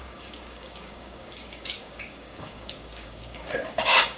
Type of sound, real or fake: fake